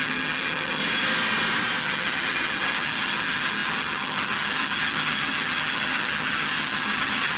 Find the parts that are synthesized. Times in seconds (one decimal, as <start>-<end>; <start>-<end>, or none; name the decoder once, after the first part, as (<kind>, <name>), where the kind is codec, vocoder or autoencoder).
0.0-0.8 (vocoder, HiFi-GAN); 1.8-7.4